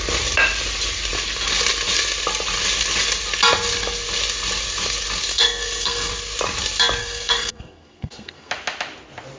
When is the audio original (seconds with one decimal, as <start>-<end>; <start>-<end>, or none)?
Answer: 0.0-5.3; 6.1-7.0; 8.5-9.4